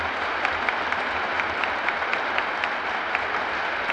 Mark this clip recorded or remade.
recorded